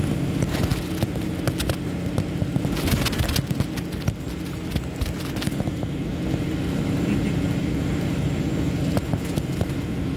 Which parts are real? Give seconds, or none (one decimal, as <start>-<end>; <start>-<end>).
0.0-10.2